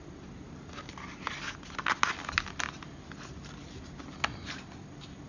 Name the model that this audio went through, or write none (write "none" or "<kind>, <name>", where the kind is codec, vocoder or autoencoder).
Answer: none